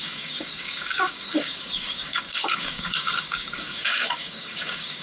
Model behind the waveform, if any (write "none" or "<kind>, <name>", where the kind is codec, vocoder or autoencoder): codec, DAC